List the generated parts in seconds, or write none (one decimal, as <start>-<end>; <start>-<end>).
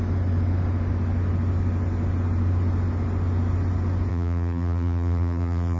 4.1-5.8